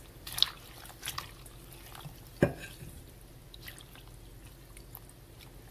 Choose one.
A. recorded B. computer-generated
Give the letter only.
A